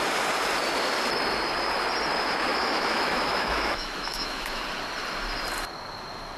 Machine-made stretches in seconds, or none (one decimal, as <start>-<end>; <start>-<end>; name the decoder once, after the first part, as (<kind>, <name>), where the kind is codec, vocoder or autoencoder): 2.5-4.6 (autoencoder, DAC-VAE)